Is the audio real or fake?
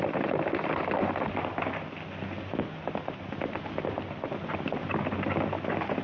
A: real